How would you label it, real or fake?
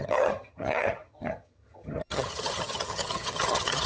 fake